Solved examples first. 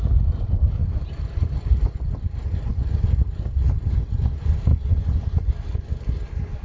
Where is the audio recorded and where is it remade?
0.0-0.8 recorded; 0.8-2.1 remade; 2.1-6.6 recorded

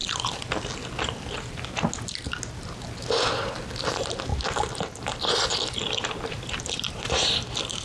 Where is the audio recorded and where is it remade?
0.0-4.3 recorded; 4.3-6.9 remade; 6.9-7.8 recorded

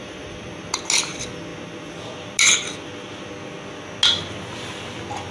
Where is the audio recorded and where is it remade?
0.0-0.8 remade; 0.8-5.3 recorded

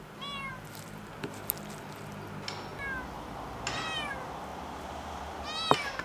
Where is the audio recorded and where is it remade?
0.0-0.5 recorded; 0.5-1.1 remade; 1.1-6.0 recorded

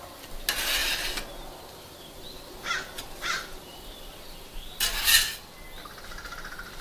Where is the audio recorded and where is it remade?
0.0-5.3 recorded; 5.3-5.9 remade; 5.9-6.8 recorded

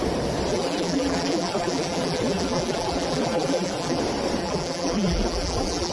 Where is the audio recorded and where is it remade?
0.0-0.5 recorded; 0.5-4.0 remade; 4.0-4.4 recorded; 4.4-5.9 remade

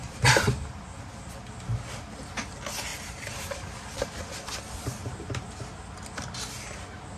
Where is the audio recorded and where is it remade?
0.0-0.8 remade; 0.8-2.9 recorded; 2.9-3.6 remade; 3.6-7.2 recorded

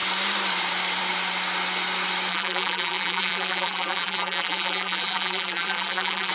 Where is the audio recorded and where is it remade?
0.0-2.3 recorded; 2.3-6.3 remade